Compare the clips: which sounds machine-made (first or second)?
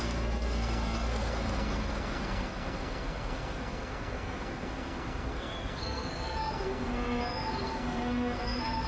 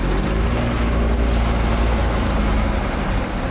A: first